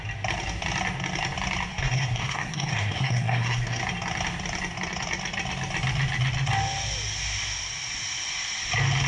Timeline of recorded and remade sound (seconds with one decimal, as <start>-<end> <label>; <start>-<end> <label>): 0.0-1.7 recorded; 1.7-3.8 remade; 3.8-9.1 recorded